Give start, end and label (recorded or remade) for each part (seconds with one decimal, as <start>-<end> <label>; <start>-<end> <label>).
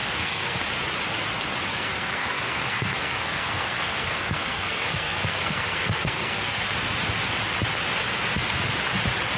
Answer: 0.0-0.6 remade; 0.6-1.7 recorded; 1.7-6.7 remade; 6.7-9.4 recorded